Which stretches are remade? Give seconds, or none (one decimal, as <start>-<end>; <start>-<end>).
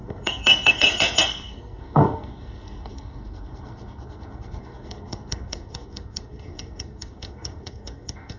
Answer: 0.0-8.4